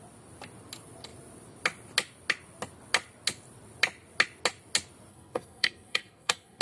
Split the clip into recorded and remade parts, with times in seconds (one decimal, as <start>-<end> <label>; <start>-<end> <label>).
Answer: 0.0-5.1 recorded; 5.1-6.6 remade